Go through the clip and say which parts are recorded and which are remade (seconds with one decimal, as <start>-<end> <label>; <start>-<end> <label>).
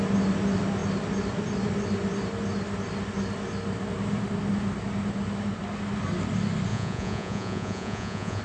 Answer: 0.0-6.7 recorded; 6.7-8.4 remade